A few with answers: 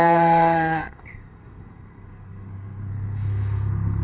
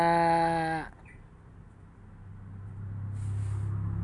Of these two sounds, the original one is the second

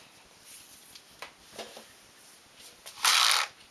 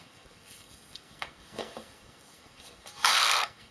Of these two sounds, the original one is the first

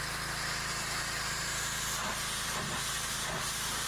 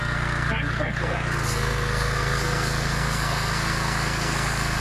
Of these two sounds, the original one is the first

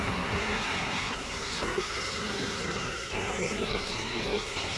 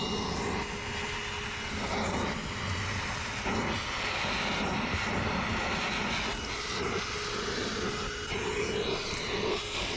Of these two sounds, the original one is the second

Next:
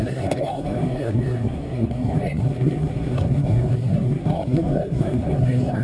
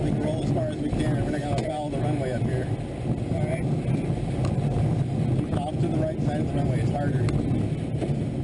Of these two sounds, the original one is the second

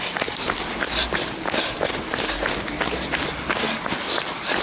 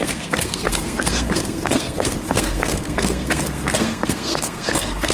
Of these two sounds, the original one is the first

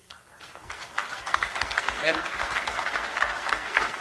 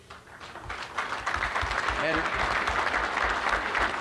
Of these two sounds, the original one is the second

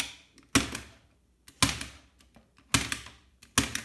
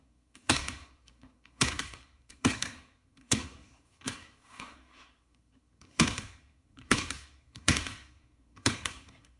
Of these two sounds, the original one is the first